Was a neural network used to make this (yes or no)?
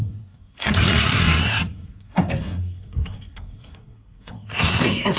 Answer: yes